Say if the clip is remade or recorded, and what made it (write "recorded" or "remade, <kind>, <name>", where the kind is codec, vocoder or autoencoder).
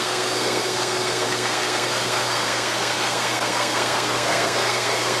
remade, codec, SNAC